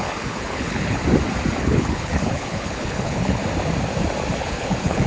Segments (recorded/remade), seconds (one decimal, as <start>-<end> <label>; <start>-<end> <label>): 0.0-1.0 remade; 1.0-1.6 recorded; 1.6-3.4 remade; 3.4-4.4 recorded; 4.4-5.1 remade